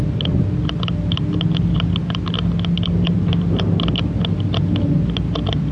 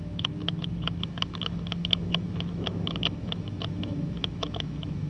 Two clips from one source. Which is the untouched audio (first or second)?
first